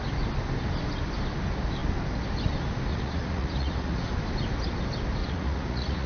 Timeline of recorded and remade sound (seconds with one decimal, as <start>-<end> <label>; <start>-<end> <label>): 0.0-2.9 recorded; 2.9-4.1 remade; 4.1-5.2 recorded; 5.2-6.1 remade